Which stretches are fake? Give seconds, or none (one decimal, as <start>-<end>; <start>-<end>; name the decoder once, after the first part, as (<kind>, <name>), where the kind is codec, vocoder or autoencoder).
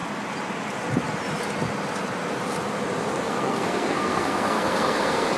3.2-5.4 (codec, SNAC)